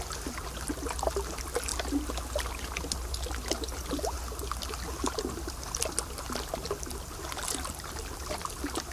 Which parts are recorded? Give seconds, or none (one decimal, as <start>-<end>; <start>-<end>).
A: 0.0-8.9